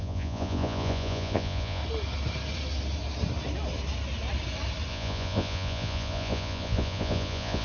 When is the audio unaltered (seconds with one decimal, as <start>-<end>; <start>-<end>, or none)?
1.8-4.9